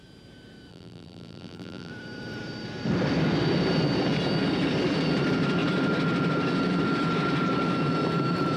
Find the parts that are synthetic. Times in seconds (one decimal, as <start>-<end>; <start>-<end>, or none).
0.7-1.9